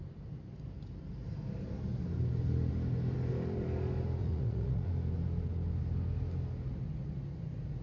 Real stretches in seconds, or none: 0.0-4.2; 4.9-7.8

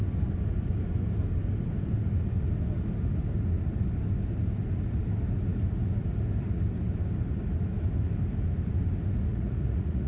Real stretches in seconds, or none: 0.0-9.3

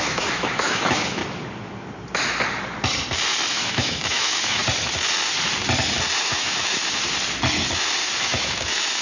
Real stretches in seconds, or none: 1.2-3.5; 4.6-6.2; 6.8-8.2